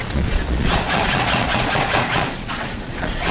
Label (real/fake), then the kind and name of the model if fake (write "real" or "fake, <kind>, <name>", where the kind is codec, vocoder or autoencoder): fake, vocoder, Vocos